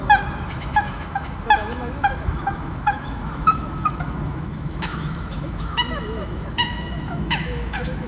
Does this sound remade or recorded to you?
remade